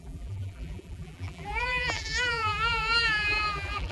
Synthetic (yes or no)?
yes